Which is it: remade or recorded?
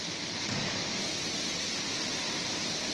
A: recorded